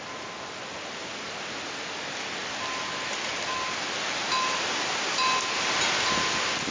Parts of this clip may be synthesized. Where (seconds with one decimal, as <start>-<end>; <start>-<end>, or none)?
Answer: none